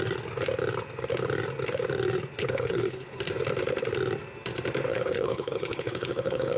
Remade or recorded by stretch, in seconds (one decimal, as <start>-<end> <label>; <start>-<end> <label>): 0.0-2.4 recorded; 2.4-3.2 remade; 3.2-4.9 recorded; 4.9-6.6 remade